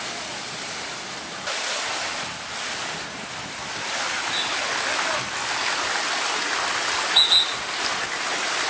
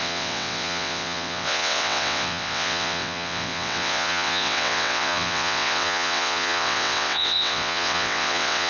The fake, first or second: second